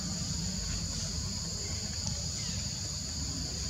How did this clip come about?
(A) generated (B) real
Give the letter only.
B